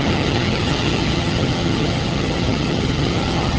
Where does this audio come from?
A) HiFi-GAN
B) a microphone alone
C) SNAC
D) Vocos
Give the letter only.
A